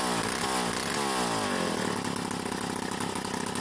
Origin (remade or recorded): recorded